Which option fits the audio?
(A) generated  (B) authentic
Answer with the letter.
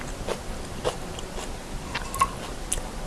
B